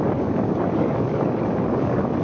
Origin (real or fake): fake